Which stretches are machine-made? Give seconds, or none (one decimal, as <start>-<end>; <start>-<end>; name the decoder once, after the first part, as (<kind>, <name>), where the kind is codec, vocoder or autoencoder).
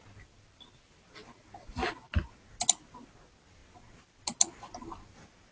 none